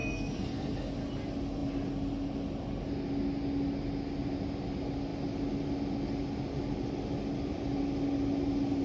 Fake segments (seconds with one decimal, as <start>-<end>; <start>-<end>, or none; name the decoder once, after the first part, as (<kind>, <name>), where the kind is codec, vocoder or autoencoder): 0.0-0.9 (codec, SNAC)